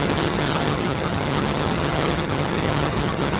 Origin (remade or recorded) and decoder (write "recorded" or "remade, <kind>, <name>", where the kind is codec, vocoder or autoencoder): remade, vocoder, HiFi-GAN